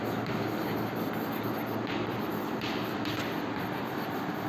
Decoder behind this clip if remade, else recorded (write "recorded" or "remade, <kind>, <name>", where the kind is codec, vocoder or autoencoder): recorded